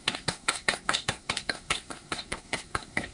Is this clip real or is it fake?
fake